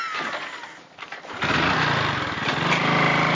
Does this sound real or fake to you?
real